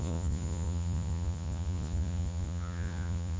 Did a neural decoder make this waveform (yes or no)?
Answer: yes